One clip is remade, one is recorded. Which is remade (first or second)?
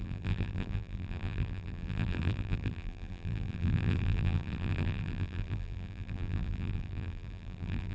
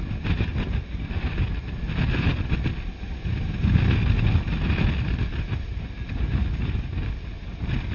first